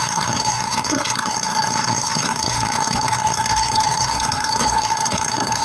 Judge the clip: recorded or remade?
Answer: remade